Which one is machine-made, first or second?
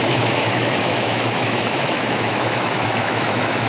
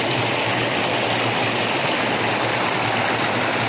first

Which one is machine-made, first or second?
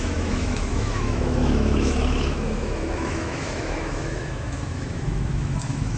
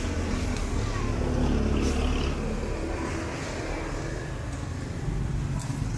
first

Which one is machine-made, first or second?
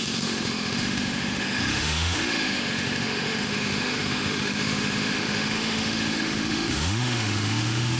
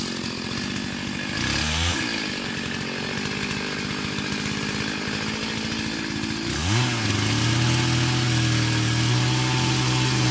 first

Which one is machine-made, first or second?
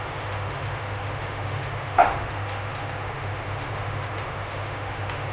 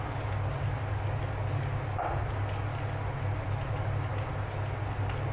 first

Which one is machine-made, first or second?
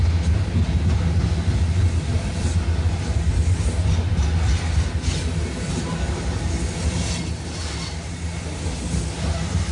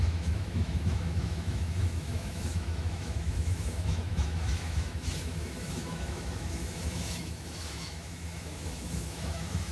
second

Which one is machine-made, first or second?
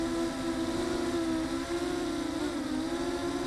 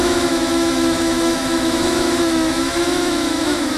second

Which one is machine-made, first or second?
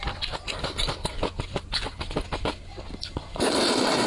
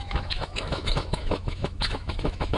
second